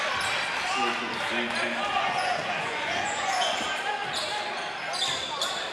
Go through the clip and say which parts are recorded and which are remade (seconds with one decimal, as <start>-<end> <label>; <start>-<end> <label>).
0.0-1.9 recorded; 1.9-3.5 remade; 3.5-5.7 recorded